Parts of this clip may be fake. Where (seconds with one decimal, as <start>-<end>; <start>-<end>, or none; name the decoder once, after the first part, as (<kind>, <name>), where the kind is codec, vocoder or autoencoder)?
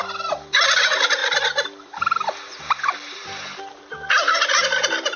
none